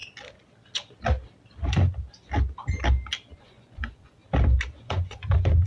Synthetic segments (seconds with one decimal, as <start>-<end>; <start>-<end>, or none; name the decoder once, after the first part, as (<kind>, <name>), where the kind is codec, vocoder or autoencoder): 3.4-4.2 (vocoder, Vocos); 4.8-5.7